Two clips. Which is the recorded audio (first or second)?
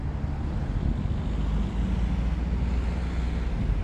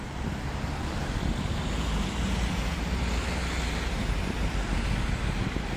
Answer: first